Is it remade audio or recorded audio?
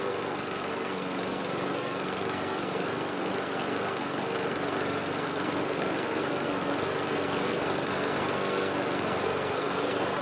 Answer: remade